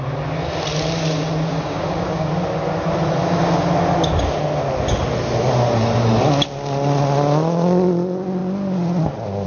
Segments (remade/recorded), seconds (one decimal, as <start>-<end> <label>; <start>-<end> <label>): 0.0-1.5 recorded; 1.5-2.3 remade; 2.3-9.5 recorded